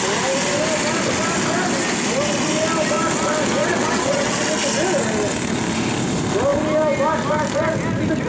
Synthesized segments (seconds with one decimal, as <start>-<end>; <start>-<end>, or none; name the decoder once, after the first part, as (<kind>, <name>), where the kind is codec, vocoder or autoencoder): 3.6-4.3 (vocoder, WaveNeXt)